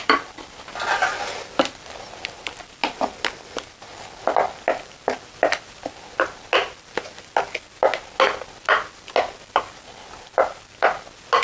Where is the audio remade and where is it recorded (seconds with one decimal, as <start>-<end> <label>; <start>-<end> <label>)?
0.0-11.4 recorded